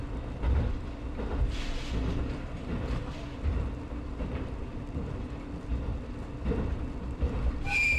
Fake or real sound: fake